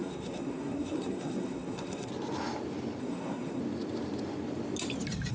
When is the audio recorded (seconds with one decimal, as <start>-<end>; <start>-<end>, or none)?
2.1-3.0; 3.6-5.3

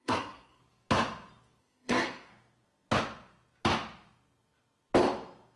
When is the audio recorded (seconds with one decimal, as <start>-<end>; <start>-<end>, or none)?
0.6-1.6; 2.3-5.6

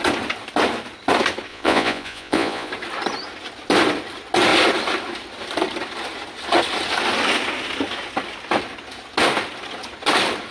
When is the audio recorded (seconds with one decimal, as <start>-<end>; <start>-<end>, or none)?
0.0-1.5; 2.7-10.5

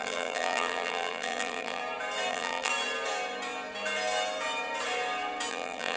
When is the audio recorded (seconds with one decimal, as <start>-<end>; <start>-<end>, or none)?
1.8-2.3; 2.7-5.5